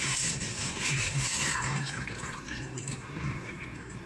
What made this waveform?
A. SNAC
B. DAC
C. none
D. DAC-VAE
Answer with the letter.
A